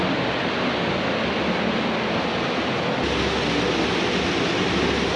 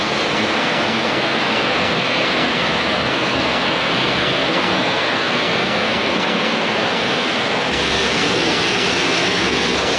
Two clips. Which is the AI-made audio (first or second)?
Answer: second